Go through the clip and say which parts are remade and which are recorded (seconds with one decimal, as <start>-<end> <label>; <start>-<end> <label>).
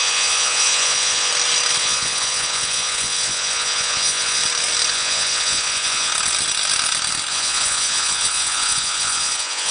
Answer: 0.0-1.3 remade; 1.3-1.8 recorded; 1.8-4.4 remade; 4.4-4.9 recorded; 4.9-6.1 remade; 6.1-7.3 recorded; 7.3-9.7 remade